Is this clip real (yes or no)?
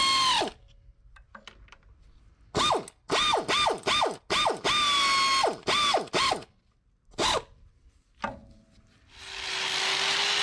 yes